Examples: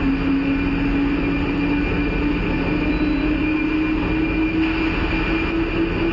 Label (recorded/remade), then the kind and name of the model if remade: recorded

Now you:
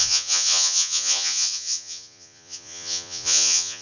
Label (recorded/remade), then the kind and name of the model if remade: remade, vocoder, Vocos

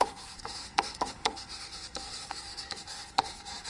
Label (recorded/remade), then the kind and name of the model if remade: remade, codec, SNAC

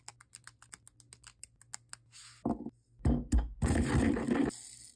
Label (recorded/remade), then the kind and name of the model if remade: recorded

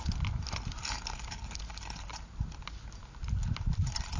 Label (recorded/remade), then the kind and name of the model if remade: recorded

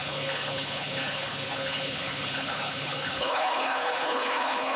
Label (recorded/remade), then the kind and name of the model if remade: remade, codec, HILCodec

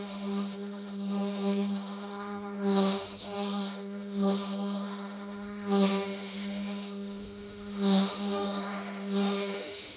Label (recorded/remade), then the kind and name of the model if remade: remade, autoencoder, DAC-VAE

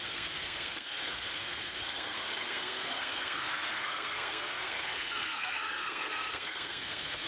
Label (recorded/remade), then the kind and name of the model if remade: remade, codec, SNAC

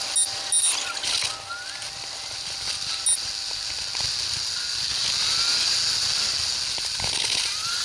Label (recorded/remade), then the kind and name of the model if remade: recorded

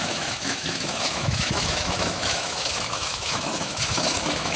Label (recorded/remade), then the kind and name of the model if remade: remade, autoencoder, DAC-VAE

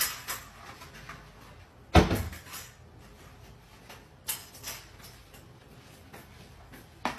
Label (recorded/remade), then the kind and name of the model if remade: recorded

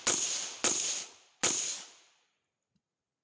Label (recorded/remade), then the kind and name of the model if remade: recorded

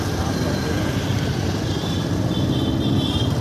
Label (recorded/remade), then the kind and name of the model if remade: recorded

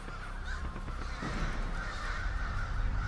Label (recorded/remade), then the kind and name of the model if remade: remade, vocoder, BigVGAN v2